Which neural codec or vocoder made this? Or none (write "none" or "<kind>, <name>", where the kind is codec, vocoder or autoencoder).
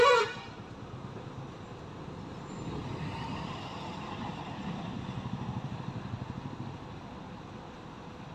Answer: vocoder, BigVGAN v2